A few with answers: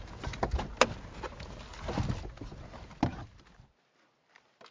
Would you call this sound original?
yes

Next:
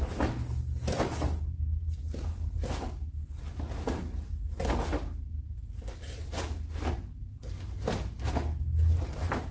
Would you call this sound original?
yes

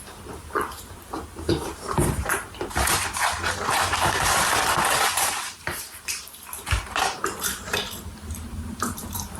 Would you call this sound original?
no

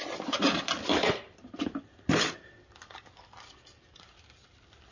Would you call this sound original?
no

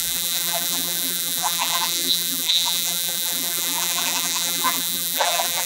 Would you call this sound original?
no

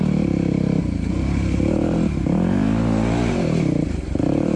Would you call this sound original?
no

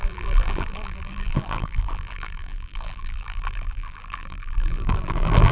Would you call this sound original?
no